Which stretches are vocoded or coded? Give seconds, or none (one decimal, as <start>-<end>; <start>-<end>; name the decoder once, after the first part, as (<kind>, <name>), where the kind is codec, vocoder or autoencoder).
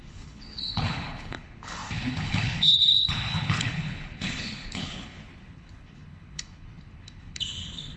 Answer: 0.0-8.0 (codec, HILCodec)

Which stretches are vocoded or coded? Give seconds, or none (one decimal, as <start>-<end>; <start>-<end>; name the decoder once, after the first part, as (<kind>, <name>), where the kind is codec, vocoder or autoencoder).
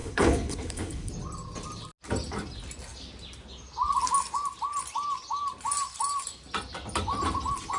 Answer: 0.0-1.1 (codec, HILCodec)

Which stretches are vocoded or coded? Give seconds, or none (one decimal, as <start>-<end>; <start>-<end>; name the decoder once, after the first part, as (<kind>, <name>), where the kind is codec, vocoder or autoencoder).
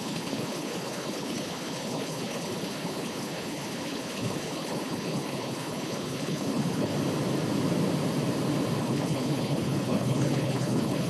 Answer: 0.0-6.9 (codec, HILCodec); 8.8-11.1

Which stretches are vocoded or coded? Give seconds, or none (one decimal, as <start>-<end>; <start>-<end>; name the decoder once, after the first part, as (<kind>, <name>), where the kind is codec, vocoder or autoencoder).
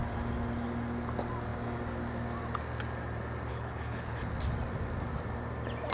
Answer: 3.5-4.3 (codec, HILCodec)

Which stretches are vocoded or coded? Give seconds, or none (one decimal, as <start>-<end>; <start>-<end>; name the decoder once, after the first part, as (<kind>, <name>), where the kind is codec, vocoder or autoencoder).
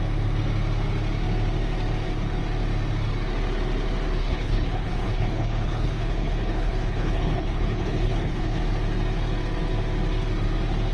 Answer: 4.2-8.6 (codec, HILCodec)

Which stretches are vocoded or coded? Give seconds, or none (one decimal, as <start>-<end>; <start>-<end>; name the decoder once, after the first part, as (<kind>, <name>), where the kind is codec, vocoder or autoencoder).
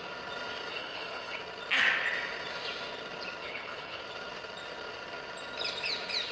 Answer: 0.7-1.4 (codec, HILCodec); 3.4-4.0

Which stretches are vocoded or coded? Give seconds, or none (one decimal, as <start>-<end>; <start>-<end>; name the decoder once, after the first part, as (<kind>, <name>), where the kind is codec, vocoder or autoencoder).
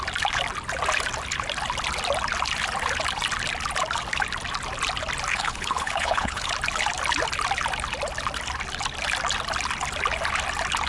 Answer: 5.3-6.5 (codec, HILCodec)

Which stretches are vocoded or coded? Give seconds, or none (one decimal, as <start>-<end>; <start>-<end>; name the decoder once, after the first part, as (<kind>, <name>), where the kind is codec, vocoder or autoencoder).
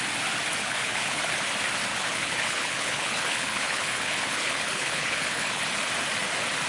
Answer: 0.6-1.2 (codec, HILCodec); 1.9-5.6